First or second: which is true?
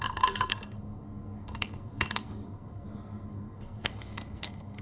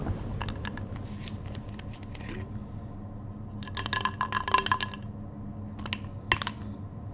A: second